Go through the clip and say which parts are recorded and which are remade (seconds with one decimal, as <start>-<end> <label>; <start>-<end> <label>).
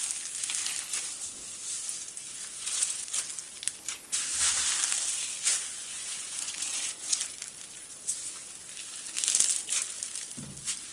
0.0-2.5 recorded; 2.5-3.1 remade; 3.1-5.5 recorded; 5.5-7.2 remade; 7.2-10.9 recorded